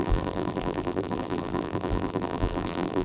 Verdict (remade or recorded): remade